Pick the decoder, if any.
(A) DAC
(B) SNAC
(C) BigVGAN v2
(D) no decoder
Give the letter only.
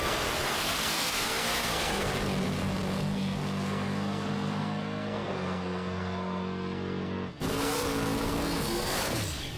B